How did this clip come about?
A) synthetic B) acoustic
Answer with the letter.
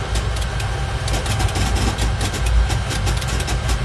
B